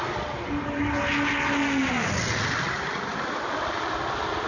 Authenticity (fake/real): real